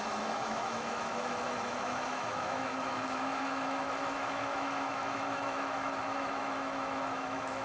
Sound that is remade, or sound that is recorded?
remade